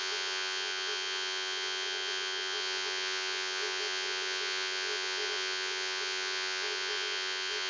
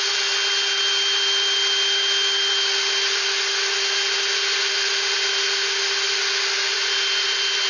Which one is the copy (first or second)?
first